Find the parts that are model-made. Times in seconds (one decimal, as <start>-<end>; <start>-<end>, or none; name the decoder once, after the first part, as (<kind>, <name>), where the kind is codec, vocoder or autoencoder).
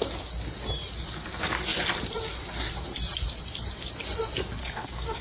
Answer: 4.6-5.2 (codec, DAC)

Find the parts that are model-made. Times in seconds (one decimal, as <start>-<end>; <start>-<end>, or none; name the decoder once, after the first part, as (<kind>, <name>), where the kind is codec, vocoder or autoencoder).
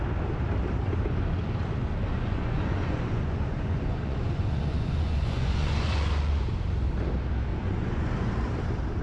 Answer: 2.1-6.4 (vocoder, Vocos); 7.5-8.3